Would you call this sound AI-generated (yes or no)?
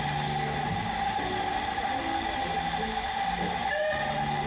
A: no